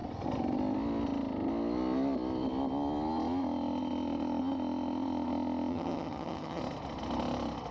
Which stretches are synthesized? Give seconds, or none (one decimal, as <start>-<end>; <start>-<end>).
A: 5.7-6.6

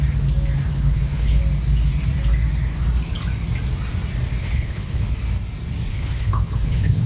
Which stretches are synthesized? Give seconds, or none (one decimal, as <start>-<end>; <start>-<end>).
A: 0.7-1.4; 4.4-5.0; 5.9-7.1

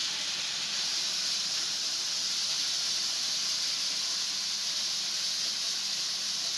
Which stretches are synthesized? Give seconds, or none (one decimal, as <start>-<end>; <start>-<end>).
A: none

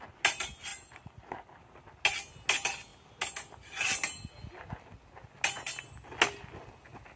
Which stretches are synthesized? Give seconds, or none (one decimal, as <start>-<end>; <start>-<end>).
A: none

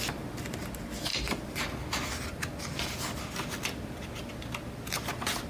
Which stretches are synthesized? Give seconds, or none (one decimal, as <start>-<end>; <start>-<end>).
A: none

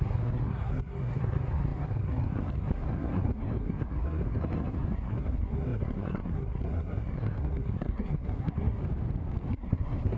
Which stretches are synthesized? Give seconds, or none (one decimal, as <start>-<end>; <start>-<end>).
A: 0.0-8.8; 9.5-10.2

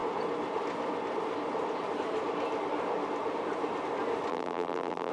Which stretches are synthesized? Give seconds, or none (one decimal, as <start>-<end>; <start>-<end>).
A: 4.3-5.1